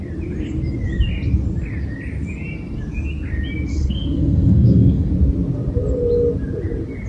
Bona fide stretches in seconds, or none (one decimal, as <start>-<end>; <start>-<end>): 0.0-3.7; 5.1-7.1